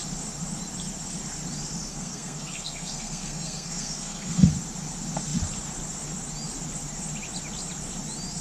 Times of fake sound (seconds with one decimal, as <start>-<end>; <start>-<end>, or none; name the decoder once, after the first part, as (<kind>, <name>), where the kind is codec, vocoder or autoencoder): 1.9-4.5 (codec, SNAC)